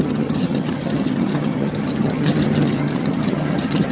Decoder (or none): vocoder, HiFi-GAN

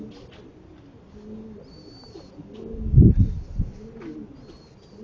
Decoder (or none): none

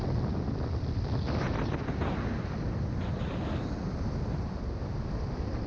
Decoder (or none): none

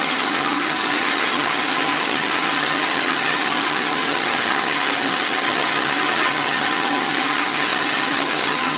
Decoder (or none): vocoder, HiFi-GAN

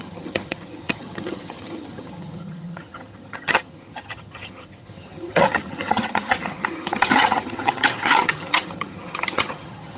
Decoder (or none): vocoder, HiFi-GAN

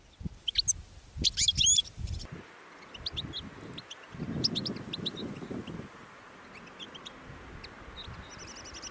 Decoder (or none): none